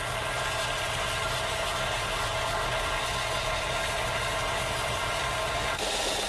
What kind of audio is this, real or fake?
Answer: real